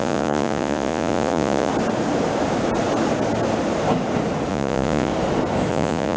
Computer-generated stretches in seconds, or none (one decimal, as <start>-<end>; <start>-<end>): 0.0-1.7; 4.5-5.1; 5.7-6.2